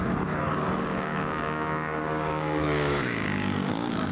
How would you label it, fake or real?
fake